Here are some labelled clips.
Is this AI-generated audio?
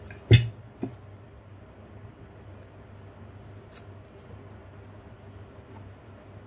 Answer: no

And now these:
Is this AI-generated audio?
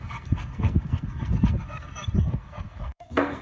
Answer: yes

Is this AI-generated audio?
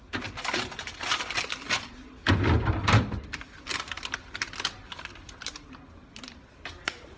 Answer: no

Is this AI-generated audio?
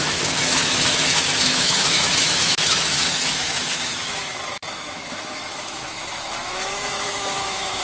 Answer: yes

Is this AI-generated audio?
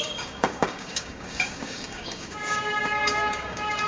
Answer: yes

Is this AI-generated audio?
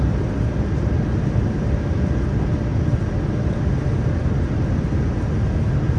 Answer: no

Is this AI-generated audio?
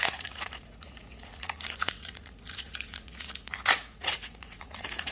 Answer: yes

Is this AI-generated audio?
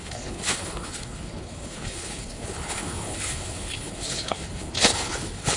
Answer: yes